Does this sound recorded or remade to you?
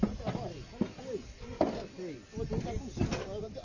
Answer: recorded